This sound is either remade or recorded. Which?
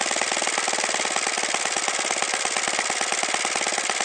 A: recorded